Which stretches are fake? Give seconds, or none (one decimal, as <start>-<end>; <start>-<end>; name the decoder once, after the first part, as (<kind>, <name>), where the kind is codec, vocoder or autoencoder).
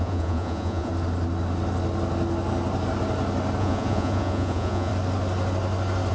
0.0-0.9 (vocoder, Vocos); 3.6-4.9